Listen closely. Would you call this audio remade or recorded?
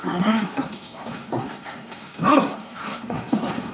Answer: remade